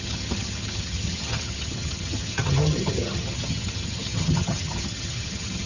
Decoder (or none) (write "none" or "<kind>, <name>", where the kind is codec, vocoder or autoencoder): vocoder, HiFi-GAN